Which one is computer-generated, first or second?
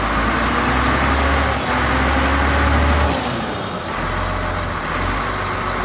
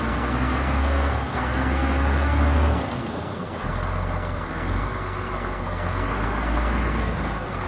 second